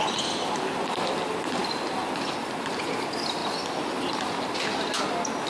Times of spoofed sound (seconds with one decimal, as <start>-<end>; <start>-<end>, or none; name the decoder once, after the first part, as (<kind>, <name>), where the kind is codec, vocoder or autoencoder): none